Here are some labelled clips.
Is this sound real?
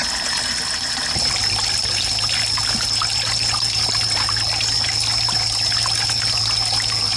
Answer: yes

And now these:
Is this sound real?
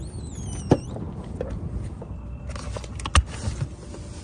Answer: yes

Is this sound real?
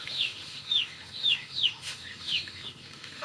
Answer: no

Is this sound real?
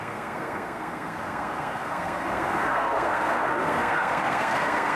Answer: no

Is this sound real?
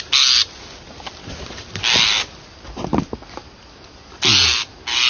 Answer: yes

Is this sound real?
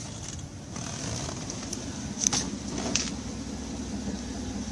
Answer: yes